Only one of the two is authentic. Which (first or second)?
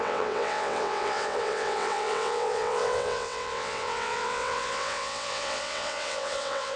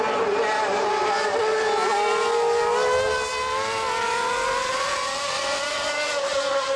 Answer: second